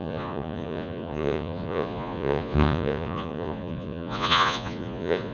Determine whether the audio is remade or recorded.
remade